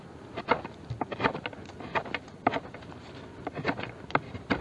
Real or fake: real